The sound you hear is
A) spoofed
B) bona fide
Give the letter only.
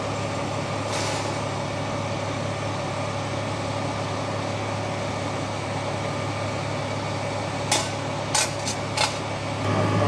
B